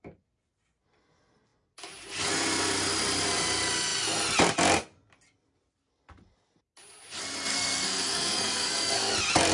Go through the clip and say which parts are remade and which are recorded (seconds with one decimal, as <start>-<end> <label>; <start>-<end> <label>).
0.0-7.5 recorded; 7.5-9.1 remade; 9.1-9.5 recorded